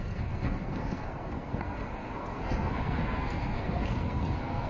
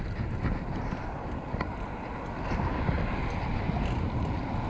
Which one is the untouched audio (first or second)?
second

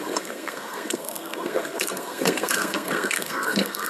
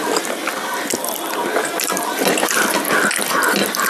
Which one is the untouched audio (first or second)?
second